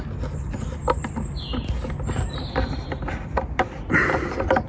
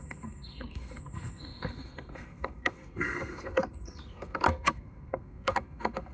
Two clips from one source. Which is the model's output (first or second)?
second